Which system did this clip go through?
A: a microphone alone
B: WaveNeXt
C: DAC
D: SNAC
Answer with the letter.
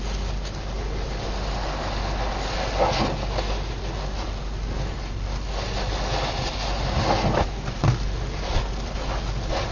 A